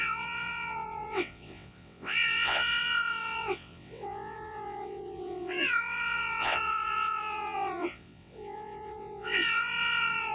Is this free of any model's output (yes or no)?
no